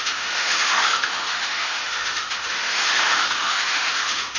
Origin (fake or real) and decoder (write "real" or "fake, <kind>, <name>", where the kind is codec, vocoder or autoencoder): fake, autoencoder, DAC-VAE